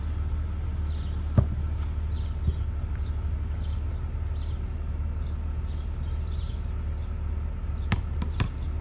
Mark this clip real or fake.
real